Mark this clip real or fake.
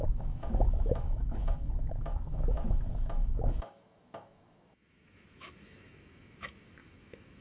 fake